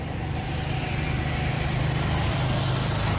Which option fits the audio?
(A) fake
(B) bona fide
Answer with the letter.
B